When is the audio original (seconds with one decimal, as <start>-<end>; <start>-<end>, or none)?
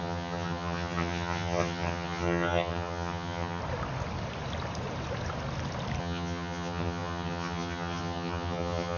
3.6-6.0